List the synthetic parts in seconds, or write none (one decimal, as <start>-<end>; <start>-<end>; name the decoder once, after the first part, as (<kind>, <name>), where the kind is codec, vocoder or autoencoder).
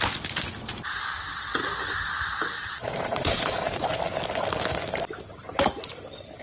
2.8-3.9 (vocoder, Vocos)